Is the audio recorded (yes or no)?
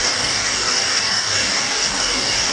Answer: no